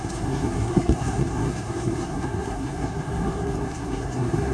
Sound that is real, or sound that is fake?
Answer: fake